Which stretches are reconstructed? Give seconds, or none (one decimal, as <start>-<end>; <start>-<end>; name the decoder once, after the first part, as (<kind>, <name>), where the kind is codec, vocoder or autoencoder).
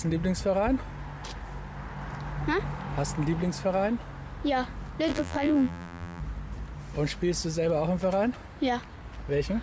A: 5.1-6.2 (vocoder, BigVGAN v2)